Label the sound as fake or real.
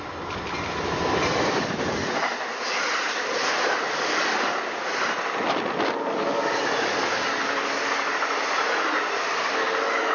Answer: real